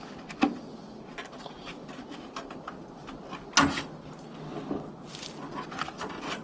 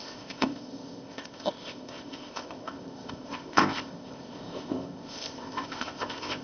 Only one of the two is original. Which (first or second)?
first